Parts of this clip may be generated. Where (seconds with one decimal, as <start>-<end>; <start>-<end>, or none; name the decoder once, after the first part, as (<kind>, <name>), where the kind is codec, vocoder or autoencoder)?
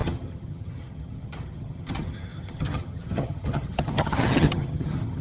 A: 0.0-5.2 (vocoder, HiFi-GAN)